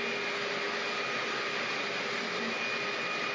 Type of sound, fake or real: real